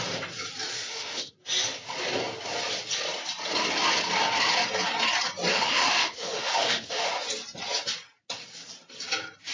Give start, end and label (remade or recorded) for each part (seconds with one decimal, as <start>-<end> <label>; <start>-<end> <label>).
0.0-0.8 recorded; 0.8-1.3 remade; 1.3-5.5 recorded; 5.5-7.1 remade; 7.1-9.5 recorded